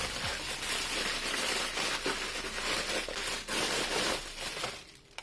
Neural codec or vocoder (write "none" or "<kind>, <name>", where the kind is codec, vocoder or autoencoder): none